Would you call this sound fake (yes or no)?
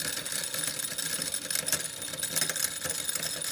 no